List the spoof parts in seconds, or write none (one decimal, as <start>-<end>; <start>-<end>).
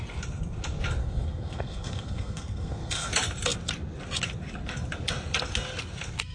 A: 1.0-3.1